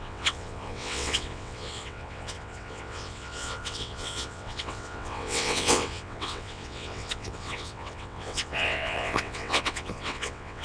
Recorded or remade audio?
remade